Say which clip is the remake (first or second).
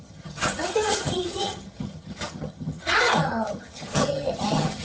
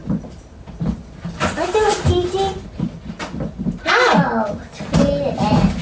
first